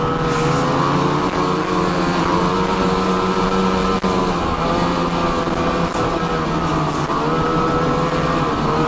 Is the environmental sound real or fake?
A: real